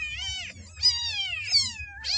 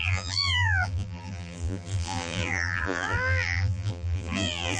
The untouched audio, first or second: first